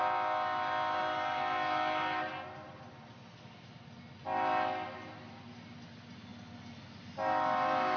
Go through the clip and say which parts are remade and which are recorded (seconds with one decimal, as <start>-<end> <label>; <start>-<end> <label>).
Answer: 0.0-8.0 recorded